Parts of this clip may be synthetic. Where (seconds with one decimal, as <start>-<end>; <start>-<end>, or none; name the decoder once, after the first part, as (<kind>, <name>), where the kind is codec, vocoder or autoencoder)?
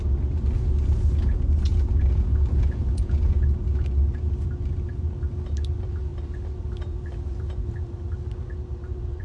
1.7-3.4 (vocoder, Vocos)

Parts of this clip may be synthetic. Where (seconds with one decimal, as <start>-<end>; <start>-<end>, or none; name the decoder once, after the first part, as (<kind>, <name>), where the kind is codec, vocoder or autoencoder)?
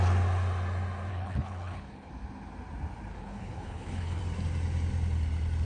1.1-2.1 (codec, HILCodec); 3.1-4.2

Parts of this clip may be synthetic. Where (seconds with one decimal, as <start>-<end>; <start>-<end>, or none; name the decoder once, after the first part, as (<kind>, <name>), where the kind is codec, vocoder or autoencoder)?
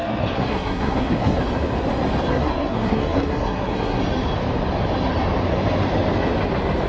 0.0-1.4 (codec, SNAC); 2.3-4.0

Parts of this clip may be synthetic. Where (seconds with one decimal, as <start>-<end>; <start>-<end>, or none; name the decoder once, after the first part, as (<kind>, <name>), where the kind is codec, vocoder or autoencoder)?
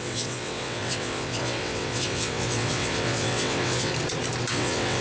0.0-3.9 (vocoder, WaveNeXt); 4.5-5.0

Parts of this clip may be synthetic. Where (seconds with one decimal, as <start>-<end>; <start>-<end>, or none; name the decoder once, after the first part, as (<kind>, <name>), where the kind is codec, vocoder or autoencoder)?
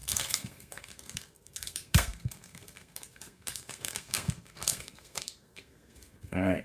0.0-6.6 (codec, SNAC)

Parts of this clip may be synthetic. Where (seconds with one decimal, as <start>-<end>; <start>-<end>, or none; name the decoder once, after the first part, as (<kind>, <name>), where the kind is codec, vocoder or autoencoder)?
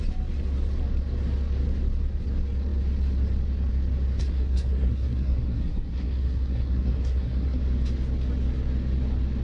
4.2-7.6 (codec, SNAC)